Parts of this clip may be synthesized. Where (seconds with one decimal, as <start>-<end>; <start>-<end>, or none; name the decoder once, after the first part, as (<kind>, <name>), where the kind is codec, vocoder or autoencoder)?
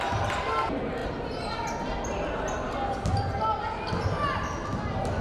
1.0-1.7 (vocoder, BigVGAN v2)